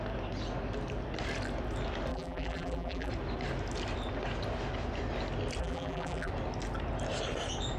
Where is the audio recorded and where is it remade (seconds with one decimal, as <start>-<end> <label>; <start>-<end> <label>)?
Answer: 0.0-2.1 recorded; 2.1-3.1 remade; 3.1-5.6 recorded; 5.6-6.3 remade; 6.3-7.8 recorded